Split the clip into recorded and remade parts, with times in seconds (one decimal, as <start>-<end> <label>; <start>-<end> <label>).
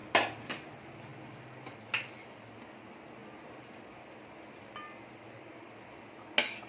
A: 0.0-6.7 recorded